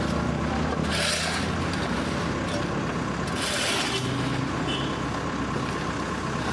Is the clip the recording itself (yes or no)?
yes